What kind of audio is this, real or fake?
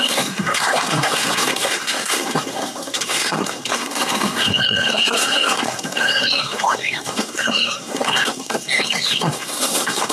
fake